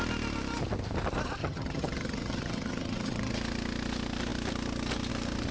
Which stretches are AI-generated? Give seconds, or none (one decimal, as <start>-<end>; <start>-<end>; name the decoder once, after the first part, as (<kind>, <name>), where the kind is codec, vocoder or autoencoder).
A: 1.4-3.3 (vocoder, HiFi-GAN)